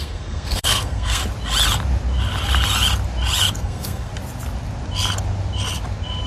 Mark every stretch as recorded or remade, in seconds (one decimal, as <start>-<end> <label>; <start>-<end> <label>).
0.0-1.2 remade; 1.2-3.5 recorded; 3.5-4.1 remade; 4.1-6.3 recorded